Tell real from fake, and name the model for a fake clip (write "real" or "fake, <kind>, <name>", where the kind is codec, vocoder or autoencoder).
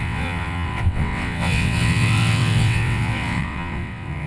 fake, vocoder, WaveNeXt